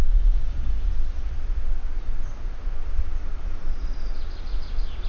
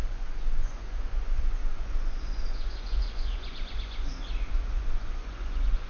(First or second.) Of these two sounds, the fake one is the second